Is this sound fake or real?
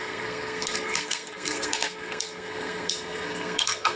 fake